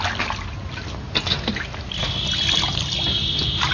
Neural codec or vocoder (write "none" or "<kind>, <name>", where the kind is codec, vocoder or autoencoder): none